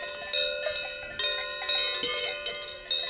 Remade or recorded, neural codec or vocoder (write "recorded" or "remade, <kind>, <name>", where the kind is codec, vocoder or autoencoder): recorded